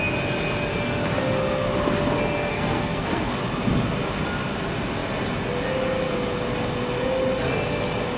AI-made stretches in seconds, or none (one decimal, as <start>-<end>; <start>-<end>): 2.5-3.3